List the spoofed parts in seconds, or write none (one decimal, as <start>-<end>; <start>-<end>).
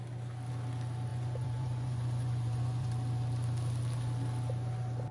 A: 1.1-2.9